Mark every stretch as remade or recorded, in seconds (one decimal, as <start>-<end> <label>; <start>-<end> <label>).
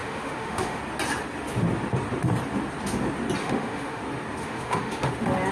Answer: 0.0-0.8 remade; 0.8-3.4 recorded; 3.4-4.0 remade; 4.0-4.4 recorded; 4.4-5.1 remade; 5.1-5.5 recorded